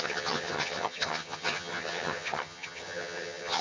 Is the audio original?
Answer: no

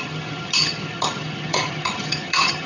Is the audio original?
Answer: no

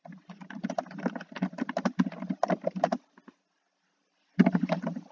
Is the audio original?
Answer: yes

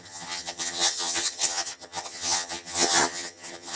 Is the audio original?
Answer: no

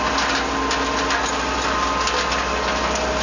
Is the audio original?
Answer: yes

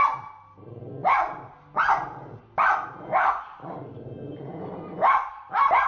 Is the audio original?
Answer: yes